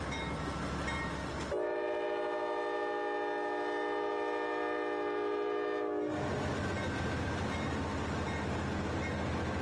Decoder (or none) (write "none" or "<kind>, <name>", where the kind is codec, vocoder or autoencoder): none